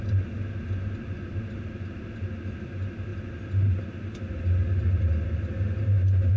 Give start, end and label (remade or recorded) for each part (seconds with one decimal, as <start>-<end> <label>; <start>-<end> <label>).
0.0-6.4 recorded